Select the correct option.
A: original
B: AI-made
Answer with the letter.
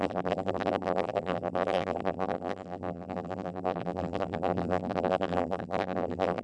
B